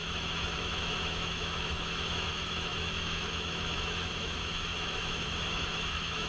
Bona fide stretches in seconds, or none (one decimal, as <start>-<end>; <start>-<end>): none